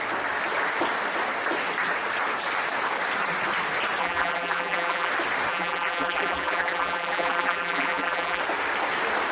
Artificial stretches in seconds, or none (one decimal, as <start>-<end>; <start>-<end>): 4.0-5.1; 5.5-8.4